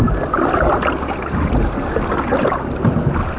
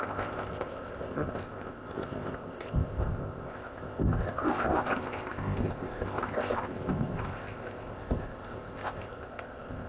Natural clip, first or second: first